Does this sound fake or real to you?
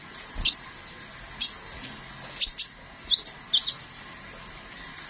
real